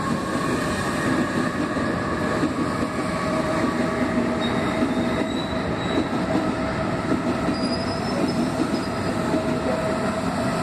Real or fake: real